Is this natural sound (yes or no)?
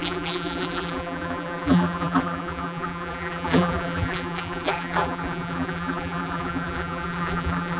no